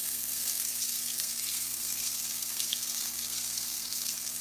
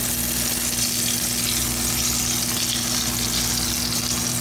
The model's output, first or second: first